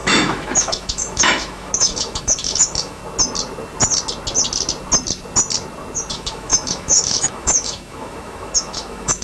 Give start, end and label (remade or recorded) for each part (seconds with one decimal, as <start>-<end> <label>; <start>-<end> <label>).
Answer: 0.0-3.0 remade; 3.0-6.1 recorded; 6.1-9.2 remade